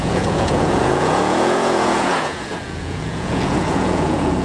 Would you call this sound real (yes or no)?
no